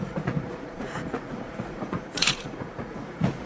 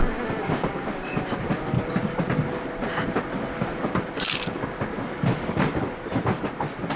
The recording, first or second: second